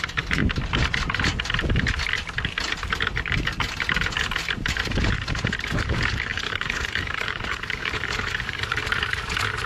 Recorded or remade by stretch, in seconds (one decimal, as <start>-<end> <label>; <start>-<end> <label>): 0.0-0.4 remade; 0.4-5.7 recorded; 5.7-8.8 remade; 8.8-9.7 recorded